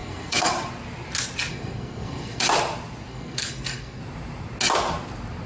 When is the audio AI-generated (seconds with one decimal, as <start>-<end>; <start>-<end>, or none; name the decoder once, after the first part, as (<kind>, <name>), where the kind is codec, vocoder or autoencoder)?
0.0-0.5 (codec, SNAC); 1.5-2.4; 3.1-4.0